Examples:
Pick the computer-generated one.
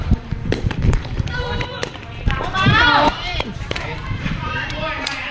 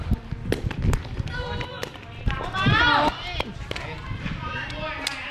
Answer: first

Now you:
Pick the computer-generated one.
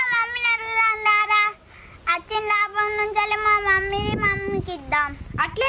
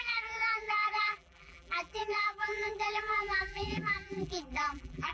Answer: second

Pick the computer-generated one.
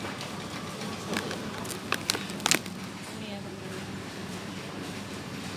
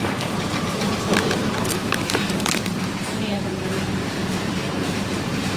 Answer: second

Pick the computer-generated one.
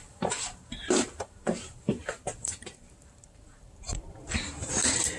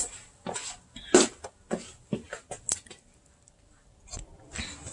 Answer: first